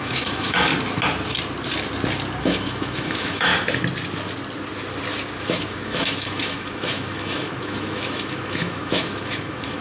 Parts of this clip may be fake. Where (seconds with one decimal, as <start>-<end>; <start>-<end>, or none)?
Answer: 0.0-0.7; 2.4-3.5; 5.4-9.8